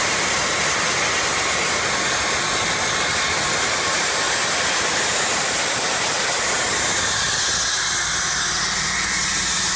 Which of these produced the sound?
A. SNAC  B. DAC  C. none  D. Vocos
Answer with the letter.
C